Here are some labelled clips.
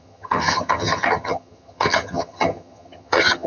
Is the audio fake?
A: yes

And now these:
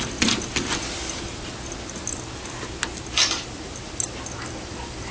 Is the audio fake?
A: no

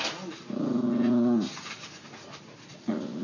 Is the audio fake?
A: no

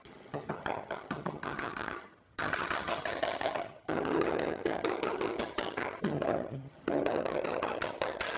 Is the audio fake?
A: yes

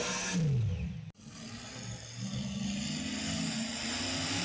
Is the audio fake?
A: no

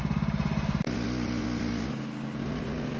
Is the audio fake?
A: no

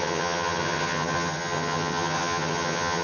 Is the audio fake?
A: yes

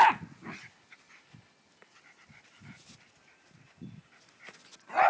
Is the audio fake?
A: no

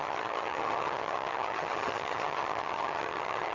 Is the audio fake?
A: yes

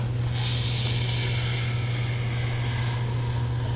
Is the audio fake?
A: no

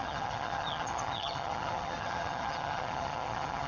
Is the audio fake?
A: yes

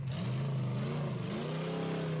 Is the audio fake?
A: no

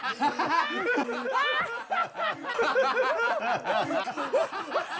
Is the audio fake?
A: no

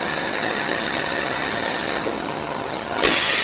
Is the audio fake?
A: yes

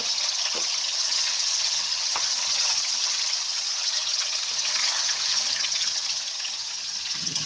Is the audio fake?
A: yes